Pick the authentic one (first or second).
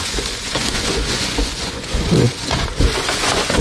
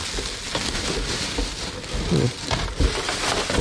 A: second